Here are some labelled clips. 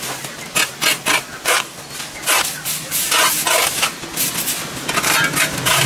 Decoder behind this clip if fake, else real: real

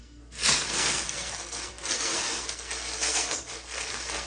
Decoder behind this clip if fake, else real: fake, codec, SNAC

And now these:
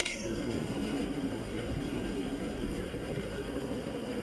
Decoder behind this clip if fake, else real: fake, codec, SNAC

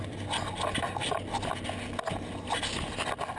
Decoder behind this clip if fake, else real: real